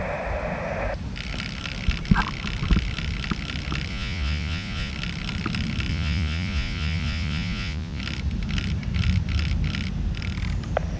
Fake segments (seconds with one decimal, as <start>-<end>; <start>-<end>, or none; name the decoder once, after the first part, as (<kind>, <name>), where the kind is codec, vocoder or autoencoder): 3.9-4.9 (vocoder, Vocos); 5.9-8.0